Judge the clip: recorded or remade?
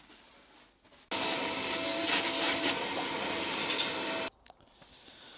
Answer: recorded